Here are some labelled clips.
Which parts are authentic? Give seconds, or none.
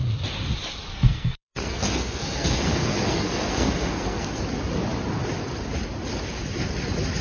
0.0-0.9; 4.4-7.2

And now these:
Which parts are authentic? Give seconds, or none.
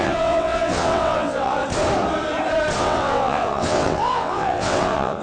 1.6-2.8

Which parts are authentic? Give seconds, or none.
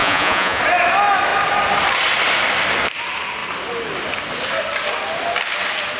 0.6-6.0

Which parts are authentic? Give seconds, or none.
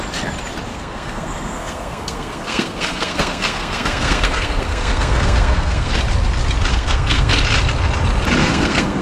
0.0-0.7; 5.9-6.7; 7.3-8.4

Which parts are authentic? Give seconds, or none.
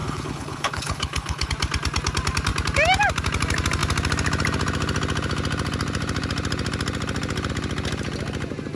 1.5-8.8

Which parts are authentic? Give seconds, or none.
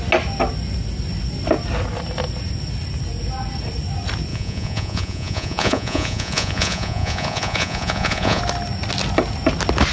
0.0-4.3; 8.4-9.9